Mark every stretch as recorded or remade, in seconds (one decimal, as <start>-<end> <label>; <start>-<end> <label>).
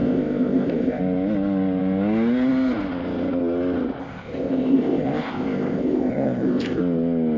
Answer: 0.0-1.0 remade; 1.0-4.0 recorded; 4.0-6.8 remade; 6.8-7.4 recorded